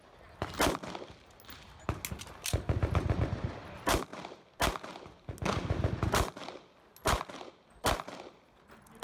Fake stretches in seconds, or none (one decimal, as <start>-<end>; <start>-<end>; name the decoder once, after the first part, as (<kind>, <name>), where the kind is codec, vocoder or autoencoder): none